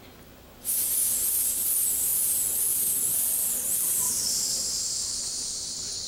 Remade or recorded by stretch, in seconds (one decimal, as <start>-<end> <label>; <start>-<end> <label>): 0.0-2.1 recorded; 2.1-6.1 remade